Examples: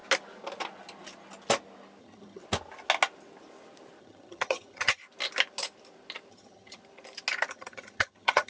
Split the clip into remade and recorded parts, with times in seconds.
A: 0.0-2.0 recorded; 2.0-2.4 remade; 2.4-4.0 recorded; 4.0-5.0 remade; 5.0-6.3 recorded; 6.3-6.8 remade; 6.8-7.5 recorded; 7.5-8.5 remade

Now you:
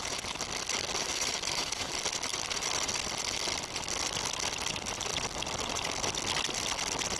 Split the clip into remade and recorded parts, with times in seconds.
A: 0.0-1.0 recorded; 1.0-1.9 remade; 1.9-7.2 recorded